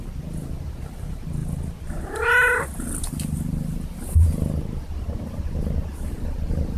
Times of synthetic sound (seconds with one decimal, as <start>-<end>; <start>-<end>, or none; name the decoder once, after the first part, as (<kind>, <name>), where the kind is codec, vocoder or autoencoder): none